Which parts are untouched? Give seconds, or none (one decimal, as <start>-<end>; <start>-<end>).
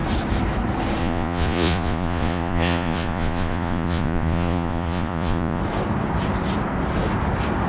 0.0-1.0; 5.6-7.7